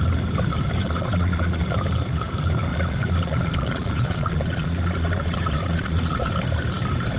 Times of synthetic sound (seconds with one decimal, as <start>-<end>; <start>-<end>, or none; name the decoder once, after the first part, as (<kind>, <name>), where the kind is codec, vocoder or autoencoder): 0.8-1.6 (vocoder, Vocos); 2.7-6.3